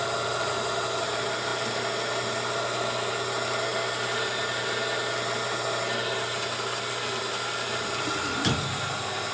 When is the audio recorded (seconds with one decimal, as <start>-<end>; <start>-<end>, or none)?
0.0-9.3